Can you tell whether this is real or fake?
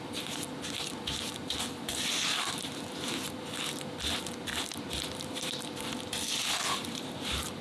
real